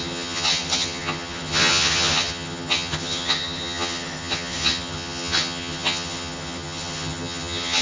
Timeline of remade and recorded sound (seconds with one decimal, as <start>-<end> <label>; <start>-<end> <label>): 0.0-7.8 remade